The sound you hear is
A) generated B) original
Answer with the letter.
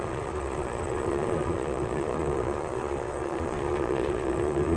A